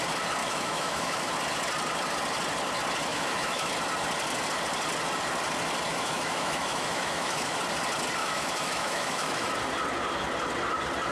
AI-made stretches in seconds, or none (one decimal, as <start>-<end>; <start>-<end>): 0.4-1.3; 3.1-3.7; 5.9-7.6; 8.2-9.5